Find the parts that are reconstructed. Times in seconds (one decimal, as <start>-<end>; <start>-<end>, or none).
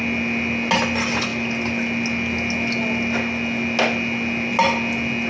none